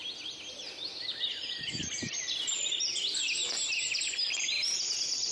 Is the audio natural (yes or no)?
yes